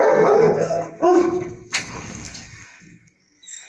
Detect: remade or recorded remade